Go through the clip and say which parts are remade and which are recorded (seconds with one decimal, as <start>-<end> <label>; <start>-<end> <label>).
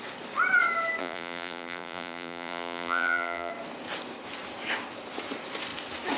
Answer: 0.0-1.0 recorded; 1.0-3.5 remade; 3.5-6.2 recorded